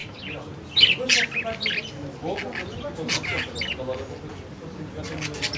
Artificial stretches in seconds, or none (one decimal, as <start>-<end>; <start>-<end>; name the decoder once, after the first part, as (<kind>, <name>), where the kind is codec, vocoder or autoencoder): none